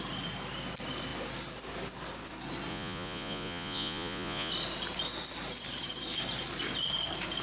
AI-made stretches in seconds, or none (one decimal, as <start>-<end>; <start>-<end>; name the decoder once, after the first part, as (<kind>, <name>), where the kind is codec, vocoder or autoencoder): 2.7-4.5 (vocoder, Vocos)